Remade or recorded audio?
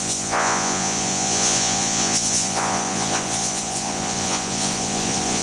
remade